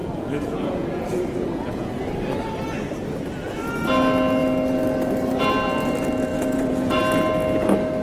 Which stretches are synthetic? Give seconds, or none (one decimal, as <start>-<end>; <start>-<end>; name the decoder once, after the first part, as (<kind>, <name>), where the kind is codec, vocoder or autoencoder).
0.0-2.0 (vocoder, Vocos); 6.3-7.0